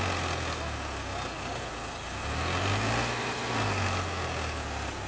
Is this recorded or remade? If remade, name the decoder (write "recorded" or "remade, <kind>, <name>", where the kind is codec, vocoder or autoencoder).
recorded